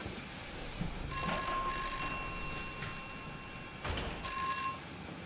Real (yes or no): yes